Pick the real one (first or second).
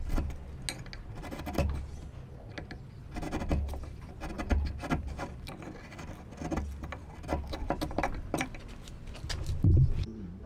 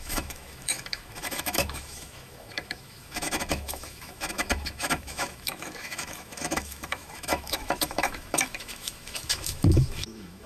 first